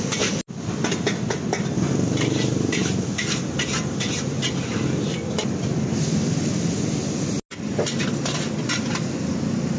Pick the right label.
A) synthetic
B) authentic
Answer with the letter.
B